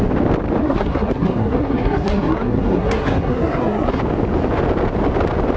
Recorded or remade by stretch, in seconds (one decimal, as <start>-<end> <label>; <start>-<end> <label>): 0.0-0.6 recorded; 0.6-4.0 remade; 4.0-5.6 recorded